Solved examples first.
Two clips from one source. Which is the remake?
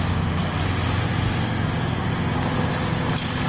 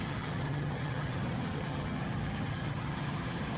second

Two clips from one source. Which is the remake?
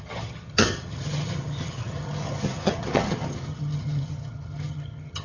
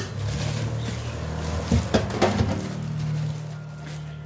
first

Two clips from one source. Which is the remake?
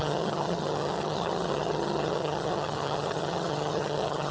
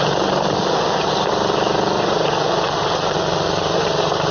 first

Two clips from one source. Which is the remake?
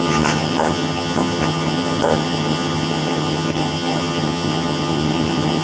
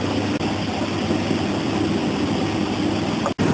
first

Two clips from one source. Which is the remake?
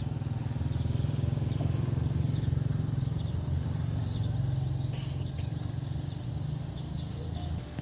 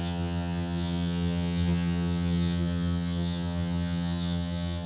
second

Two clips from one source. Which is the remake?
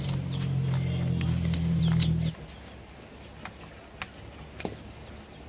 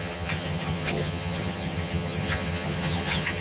second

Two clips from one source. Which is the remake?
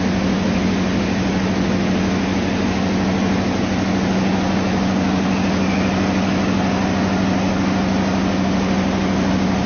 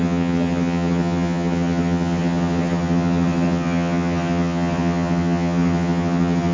second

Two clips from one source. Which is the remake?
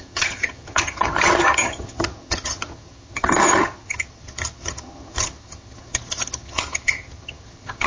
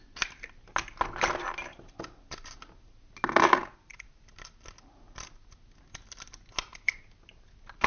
first